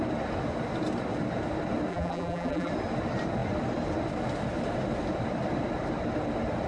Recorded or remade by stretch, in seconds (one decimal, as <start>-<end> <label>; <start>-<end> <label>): 0.0-1.9 recorded; 1.9-2.7 remade; 2.7-6.7 recorded